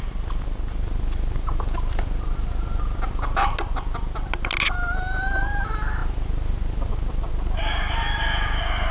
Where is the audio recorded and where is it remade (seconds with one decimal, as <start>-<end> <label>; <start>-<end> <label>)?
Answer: 0.0-8.9 recorded